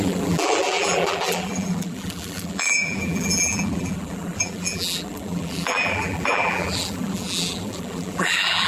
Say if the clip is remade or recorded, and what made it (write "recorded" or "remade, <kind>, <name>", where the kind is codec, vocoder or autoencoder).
remade, vocoder, BigVGAN v2